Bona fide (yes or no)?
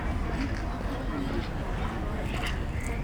yes